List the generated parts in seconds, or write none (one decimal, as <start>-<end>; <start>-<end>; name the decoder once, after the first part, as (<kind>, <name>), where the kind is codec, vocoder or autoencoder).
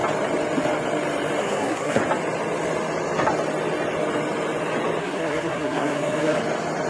1.4-2.0 (codec, SNAC); 5.0-6.4